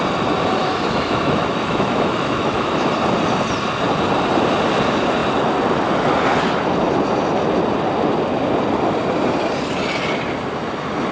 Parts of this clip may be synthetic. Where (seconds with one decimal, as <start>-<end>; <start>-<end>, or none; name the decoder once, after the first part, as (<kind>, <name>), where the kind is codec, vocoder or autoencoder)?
0.6-2.9 (autoencoder, DAC-VAE)